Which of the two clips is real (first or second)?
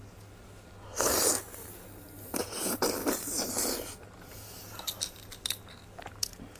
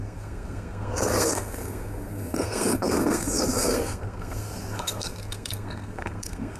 first